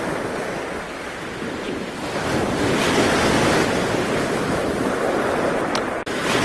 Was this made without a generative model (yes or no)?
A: yes